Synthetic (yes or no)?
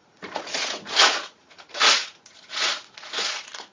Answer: yes